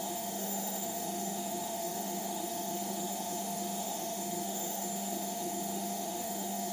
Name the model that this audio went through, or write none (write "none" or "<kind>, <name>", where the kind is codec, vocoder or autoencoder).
autoencoder, DAC-VAE